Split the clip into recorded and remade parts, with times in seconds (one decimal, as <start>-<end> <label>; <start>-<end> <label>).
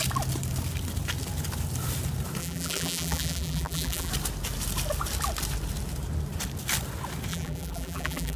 0.0-2.4 recorded; 2.4-4.1 remade; 4.1-7.3 recorded; 7.3-8.4 remade